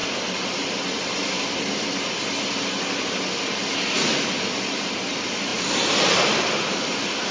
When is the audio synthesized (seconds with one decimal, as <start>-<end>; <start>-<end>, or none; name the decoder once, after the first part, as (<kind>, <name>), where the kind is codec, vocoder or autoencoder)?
5.5-6.4 (vocoder, BigVGAN v2)